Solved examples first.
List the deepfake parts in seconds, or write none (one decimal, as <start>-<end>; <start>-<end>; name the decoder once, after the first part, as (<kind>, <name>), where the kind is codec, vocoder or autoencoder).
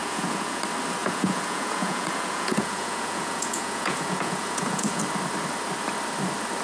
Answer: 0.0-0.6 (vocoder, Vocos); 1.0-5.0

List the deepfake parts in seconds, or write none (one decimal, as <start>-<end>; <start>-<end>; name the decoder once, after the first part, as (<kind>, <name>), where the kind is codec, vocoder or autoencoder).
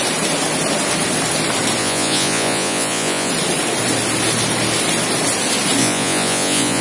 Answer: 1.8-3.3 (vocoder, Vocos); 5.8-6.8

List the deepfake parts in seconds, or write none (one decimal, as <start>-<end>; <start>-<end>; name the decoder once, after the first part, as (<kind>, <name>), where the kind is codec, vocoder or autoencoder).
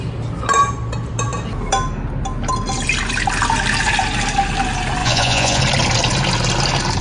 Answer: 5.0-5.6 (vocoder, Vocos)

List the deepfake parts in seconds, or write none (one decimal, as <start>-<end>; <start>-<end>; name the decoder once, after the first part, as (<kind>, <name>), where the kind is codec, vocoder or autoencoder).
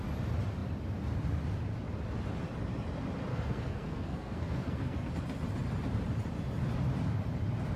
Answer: 3.3-5.1 (codec, SNAC)